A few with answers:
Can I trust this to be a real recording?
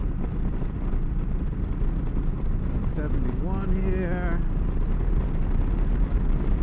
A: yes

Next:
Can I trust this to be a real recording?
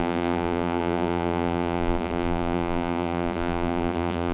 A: no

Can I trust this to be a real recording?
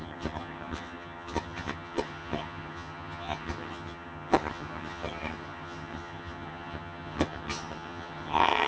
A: no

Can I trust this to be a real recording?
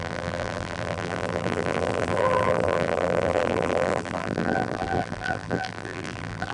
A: no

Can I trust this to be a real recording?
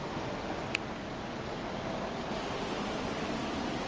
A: yes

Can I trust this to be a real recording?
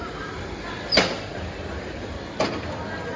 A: yes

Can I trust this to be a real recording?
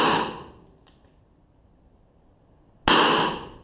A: yes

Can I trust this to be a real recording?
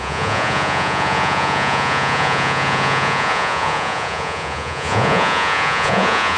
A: no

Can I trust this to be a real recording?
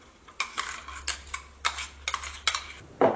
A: yes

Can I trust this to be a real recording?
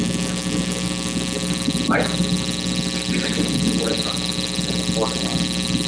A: yes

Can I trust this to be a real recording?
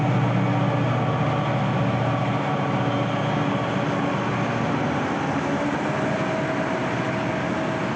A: yes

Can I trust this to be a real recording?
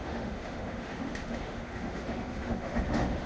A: no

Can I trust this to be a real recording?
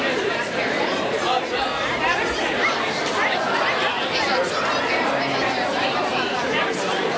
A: no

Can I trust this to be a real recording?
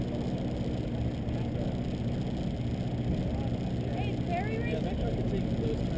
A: yes